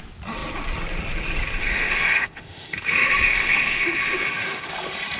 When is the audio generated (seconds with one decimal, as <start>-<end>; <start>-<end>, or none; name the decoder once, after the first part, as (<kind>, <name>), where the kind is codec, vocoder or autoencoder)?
1.6-4.7 (autoencoder, DAC-VAE)